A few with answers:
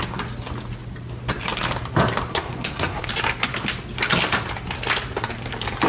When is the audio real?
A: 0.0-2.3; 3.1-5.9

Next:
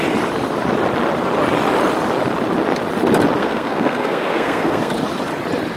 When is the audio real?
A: 0.0-3.4; 4.9-5.8

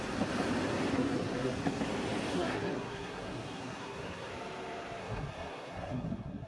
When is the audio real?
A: 0.0-0.9; 1.8-2.3; 4.3-5.0

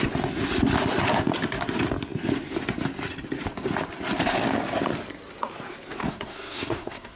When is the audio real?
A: 0.0-6.0

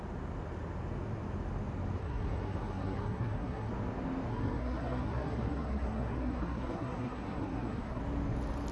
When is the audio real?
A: 0.0-2.0; 3.7-4.3; 8.0-8.7